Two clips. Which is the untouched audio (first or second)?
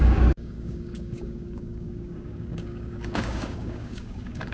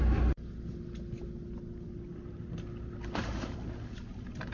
second